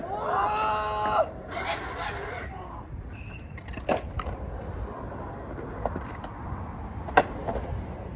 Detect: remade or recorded recorded